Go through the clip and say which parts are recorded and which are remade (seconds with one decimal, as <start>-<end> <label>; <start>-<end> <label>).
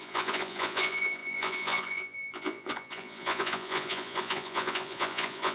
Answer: 0.0-5.5 remade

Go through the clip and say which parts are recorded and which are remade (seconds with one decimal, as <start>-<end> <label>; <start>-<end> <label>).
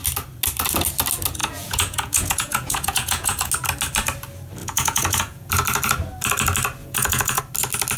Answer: 0.0-1.4 recorded; 1.4-3.5 remade; 3.5-4.6 recorded; 4.6-5.5 remade; 5.5-6.8 recorded; 6.8-7.4 remade; 7.4-8.0 recorded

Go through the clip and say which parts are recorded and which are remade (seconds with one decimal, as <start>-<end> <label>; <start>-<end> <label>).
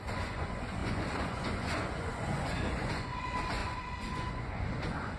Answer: 0.0-5.2 remade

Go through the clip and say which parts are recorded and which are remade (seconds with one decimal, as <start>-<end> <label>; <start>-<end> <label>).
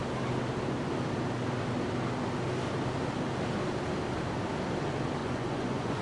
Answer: 0.0-5.2 recorded; 5.2-6.0 remade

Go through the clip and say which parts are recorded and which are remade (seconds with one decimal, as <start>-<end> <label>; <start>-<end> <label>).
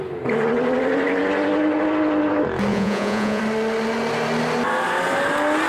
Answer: 0.0-2.7 recorded; 2.7-3.4 remade; 3.4-5.7 recorded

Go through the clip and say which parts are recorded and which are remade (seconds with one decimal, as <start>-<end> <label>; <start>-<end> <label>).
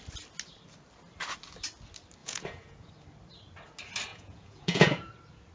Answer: 0.0-2.2 recorded; 2.2-2.9 remade; 2.9-4.1 recorded; 4.1-5.1 remade; 5.1-5.5 recorded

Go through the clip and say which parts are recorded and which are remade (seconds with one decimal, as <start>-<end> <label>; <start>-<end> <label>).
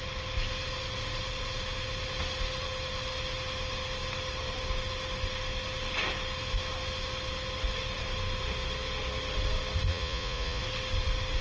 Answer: 0.0-9.9 recorded; 9.9-10.6 remade; 10.6-11.4 recorded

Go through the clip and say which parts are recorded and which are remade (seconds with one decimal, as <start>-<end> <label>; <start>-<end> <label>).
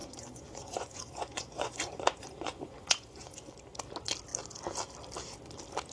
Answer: 0.0-3.5 remade; 3.5-5.9 recorded